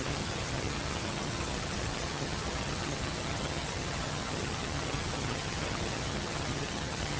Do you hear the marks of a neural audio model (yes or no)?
yes